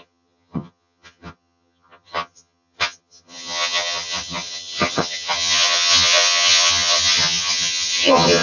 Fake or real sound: fake